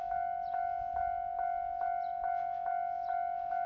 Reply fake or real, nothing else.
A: real